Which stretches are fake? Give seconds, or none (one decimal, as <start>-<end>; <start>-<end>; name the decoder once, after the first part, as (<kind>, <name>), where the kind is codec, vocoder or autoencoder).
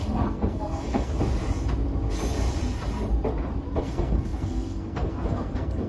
0.0-1.1 (codec, SNAC); 3.8-5.9